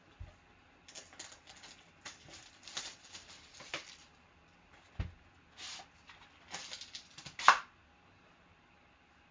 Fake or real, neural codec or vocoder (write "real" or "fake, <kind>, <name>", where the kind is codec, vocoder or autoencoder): real